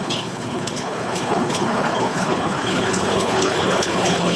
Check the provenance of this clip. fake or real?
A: fake